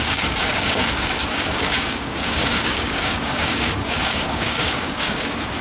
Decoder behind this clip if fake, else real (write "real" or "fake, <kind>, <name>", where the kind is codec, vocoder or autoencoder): fake, codec, DAC